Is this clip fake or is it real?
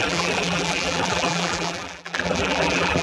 fake